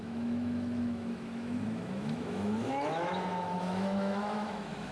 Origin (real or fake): fake